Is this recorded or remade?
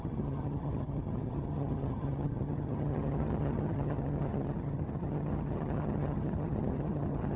remade